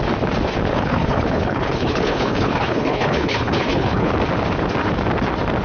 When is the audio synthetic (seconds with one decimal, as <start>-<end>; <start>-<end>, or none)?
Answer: 0.7-4.1